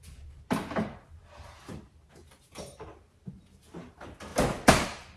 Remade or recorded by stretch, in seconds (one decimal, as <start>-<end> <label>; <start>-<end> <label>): 0.0-5.2 recorded